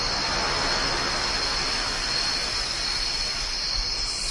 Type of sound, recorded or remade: recorded